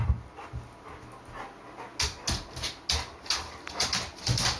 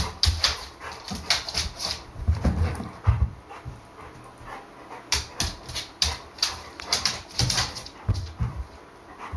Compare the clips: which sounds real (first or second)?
first